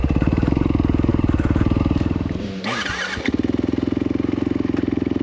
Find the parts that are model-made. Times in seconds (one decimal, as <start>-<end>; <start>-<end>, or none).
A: 0.0-5.2